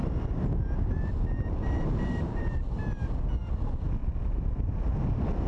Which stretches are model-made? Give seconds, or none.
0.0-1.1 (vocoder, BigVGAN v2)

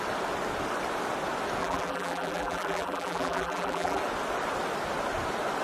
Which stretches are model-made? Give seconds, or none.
1.6-4.0 (vocoder, BigVGAN v2)